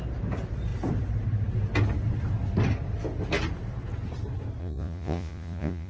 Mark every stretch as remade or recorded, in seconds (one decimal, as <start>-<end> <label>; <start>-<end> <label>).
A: 0.0-4.6 recorded; 4.6-5.9 remade